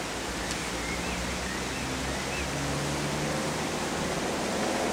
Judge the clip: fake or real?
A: real